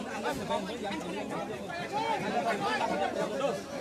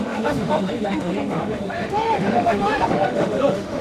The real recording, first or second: first